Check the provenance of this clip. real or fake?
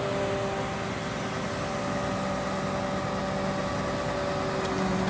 real